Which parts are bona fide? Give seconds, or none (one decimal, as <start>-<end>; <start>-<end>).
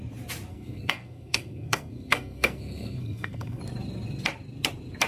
0.0-0.5; 3.6-5.1